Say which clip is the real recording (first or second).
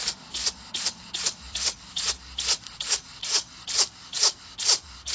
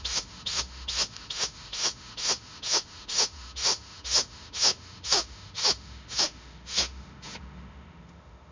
first